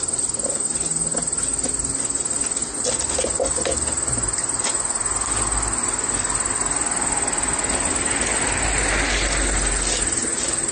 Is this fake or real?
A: real